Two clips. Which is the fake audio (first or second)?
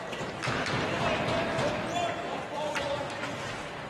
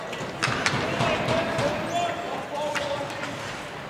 first